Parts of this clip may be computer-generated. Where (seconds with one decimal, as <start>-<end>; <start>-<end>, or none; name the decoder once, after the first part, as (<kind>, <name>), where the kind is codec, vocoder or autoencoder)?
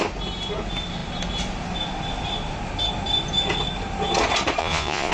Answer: 4.6-5.1 (vocoder, Vocos)